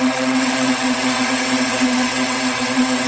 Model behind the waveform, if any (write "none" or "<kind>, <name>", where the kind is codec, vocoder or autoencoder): vocoder, WaveNeXt